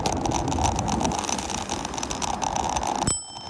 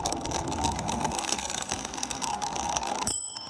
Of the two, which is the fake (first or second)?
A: second